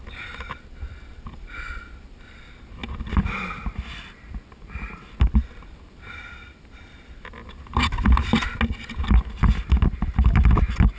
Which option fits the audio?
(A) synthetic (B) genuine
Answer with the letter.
B